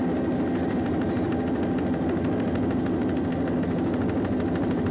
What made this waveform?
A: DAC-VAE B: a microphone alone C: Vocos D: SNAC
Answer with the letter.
B